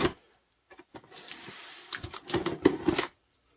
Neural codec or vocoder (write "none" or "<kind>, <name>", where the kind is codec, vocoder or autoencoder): none